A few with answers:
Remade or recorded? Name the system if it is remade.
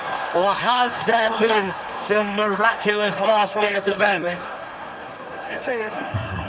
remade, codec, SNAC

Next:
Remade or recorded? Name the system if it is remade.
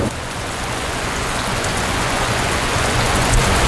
remade, vocoder, Vocos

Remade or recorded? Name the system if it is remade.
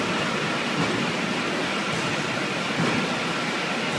recorded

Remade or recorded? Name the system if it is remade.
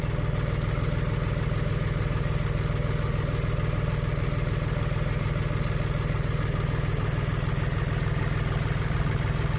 recorded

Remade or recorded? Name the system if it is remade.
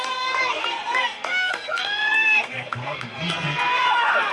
remade, codec, SNAC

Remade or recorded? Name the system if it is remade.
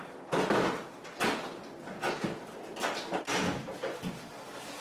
recorded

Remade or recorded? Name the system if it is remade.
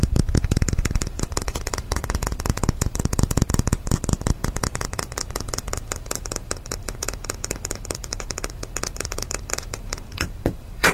remade, vocoder, BigVGAN v2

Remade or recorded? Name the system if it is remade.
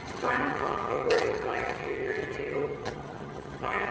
remade, vocoder, HiFi-GAN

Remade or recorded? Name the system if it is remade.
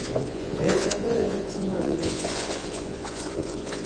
remade, vocoder, Vocos